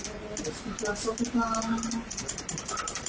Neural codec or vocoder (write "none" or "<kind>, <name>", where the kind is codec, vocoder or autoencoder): none